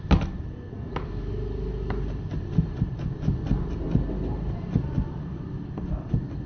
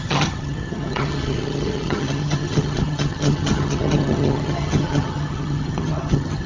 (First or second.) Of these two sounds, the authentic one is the first